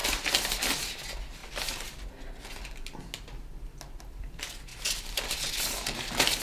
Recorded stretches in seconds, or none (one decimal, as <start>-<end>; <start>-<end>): 0.6-4.7; 5.5-6.4